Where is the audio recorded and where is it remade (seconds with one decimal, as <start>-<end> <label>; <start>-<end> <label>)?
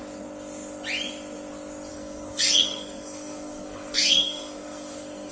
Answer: 0.0-1.9 recorded; 1.9-5.3 remade